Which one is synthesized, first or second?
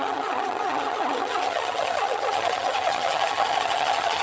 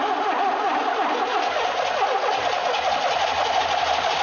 first